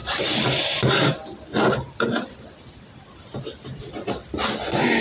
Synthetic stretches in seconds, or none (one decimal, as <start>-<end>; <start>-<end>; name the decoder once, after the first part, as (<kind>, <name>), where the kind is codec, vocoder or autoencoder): none